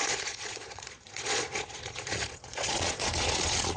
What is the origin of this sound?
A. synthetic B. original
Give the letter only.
A